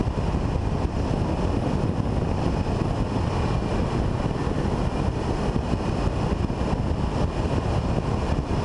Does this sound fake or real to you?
real